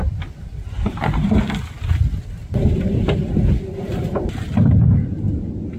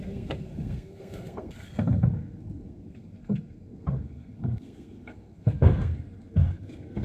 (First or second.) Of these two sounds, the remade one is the second